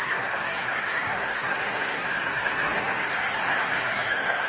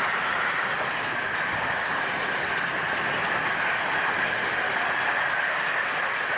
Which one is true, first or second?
second